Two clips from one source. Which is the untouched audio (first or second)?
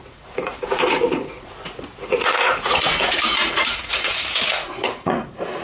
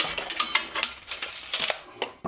second